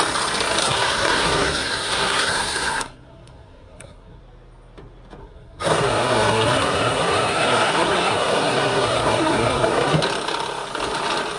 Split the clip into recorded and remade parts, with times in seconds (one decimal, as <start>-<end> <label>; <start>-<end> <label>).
0.0-0.6 recorded; 0.6-4.2 remade; 4.2-5.2 recorded; 5.2-10.0 remade; 10.0-11.4 recorded